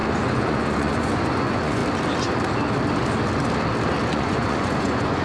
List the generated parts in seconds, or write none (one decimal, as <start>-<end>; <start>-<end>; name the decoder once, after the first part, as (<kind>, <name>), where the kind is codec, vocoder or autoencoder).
0.0-1.8 (vocoder, Vocos); 4.1-5.2